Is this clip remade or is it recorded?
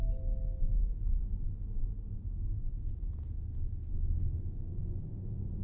recorded